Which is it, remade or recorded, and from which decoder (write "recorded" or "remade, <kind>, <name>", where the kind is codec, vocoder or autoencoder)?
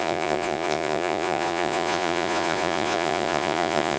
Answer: remade, vocoder, Vocos